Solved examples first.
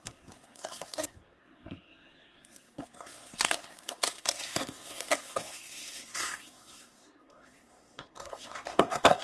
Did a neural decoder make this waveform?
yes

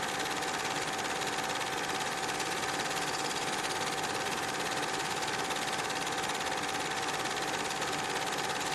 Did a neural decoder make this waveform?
no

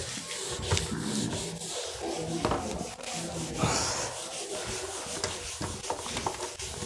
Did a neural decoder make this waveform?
no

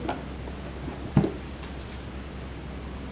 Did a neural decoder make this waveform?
no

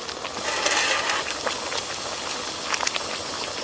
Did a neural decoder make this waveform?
no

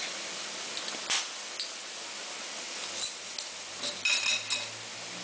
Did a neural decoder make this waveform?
no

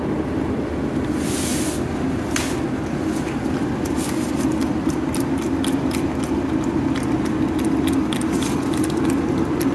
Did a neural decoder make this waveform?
no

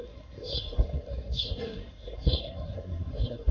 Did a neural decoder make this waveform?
yes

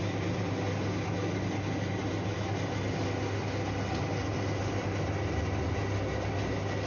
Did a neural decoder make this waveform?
no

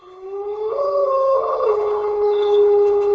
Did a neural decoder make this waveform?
yes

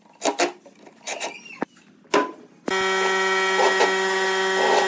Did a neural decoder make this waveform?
no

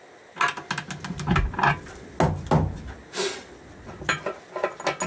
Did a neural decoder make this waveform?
no